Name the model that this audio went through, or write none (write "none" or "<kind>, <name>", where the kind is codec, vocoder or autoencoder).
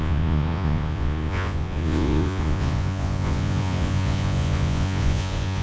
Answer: vocoder, Vocos